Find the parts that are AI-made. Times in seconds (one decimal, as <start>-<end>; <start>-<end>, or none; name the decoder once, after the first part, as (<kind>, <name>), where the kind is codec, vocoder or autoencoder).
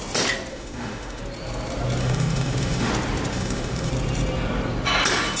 0.5-1.2 (autoencoder, DAC-VAE); 2.0-2.9; 3.3-3.9